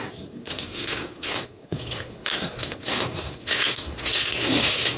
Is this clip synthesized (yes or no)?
yes